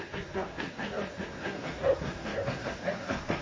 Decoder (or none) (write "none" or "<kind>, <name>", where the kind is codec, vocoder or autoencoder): codec, SNAC